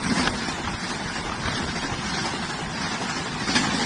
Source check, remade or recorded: recorded